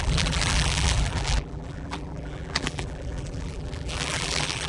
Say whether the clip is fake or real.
fake